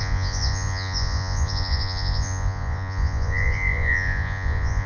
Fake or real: fake